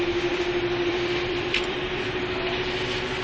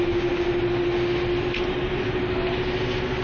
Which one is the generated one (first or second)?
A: first